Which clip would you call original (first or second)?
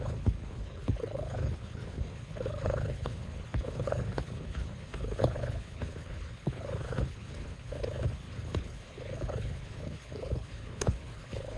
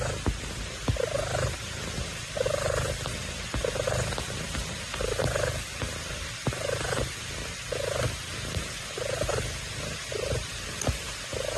second